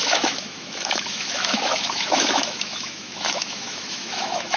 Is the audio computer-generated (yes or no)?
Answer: yes